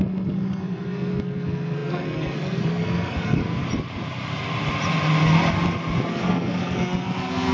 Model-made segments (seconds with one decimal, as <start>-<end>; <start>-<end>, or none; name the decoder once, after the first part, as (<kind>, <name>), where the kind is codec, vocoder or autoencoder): 0.0-3.4 (codec, SNAC); 6.1-7.5